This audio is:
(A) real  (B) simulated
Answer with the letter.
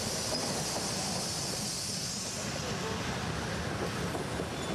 A